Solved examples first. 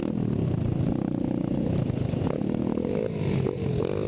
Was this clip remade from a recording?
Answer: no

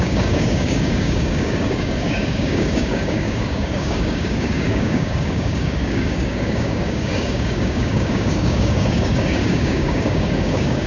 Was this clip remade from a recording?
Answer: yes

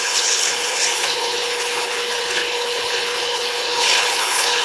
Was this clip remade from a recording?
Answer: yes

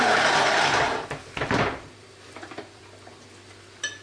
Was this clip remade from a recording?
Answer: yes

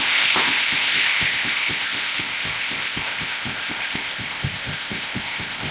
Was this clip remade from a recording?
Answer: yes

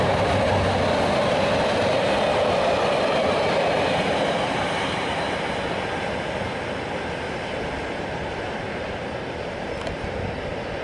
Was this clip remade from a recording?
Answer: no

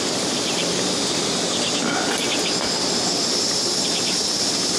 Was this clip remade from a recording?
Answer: no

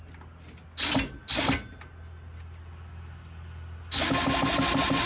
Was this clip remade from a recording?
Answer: no